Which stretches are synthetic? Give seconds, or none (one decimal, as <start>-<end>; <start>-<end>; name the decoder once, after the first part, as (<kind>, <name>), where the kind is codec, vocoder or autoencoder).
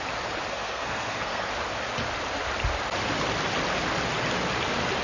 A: 0.5-1.5 (codec, SNAC)